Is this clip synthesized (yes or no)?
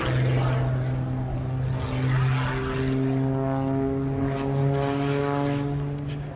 no